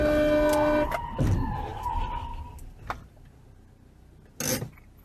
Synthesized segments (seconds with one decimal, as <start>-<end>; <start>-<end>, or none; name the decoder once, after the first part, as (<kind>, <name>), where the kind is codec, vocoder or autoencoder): none